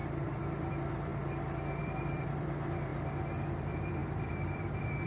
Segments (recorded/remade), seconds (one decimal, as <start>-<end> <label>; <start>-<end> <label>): 0.0-1.1 remade; 1.1-1.8 recorded; 1.8-2.9 remade; 2.9-3.6 recorded; 3.6-5.1 remade